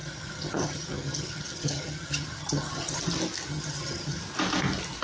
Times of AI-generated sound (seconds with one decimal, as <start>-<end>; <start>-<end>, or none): 0.0-3.0; 3.5-4.2